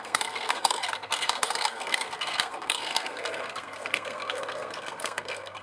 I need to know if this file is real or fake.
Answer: fake